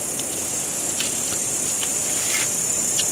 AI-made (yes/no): yes